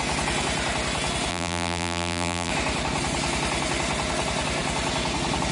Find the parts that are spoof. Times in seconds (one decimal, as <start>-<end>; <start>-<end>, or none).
1.3-2.5